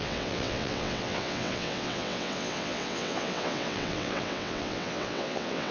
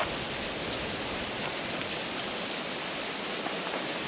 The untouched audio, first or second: second